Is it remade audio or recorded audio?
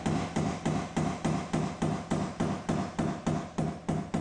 recorded